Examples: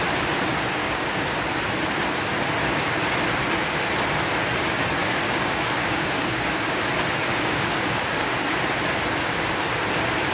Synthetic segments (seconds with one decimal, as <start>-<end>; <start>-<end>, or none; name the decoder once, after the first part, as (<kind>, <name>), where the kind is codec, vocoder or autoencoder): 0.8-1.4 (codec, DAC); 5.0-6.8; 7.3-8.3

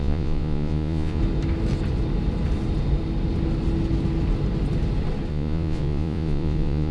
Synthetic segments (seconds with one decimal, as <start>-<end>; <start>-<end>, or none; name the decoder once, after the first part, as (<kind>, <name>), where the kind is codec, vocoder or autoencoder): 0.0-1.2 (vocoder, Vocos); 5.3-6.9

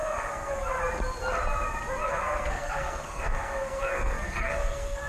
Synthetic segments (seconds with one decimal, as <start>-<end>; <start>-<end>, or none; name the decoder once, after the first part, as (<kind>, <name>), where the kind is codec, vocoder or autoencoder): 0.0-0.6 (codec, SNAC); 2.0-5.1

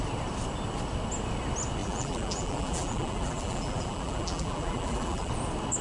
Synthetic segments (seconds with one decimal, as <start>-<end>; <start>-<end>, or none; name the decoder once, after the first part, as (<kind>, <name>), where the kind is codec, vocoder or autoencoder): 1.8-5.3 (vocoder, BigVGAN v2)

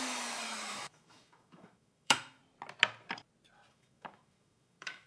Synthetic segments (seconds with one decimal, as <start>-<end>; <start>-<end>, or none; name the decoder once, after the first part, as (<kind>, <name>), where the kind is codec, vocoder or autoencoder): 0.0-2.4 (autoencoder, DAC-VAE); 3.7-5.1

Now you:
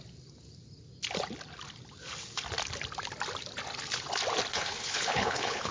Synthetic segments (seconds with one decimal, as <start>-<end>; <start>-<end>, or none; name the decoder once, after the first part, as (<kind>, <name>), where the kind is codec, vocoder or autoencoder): 4.5-5.7 (codec, HILCodec)

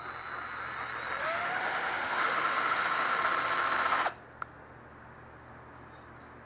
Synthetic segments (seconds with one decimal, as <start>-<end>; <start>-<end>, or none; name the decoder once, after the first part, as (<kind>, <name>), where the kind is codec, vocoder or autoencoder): 1.2-3.2 (autoencoder, DAC-VAE)